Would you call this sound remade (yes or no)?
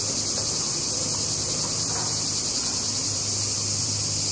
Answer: yes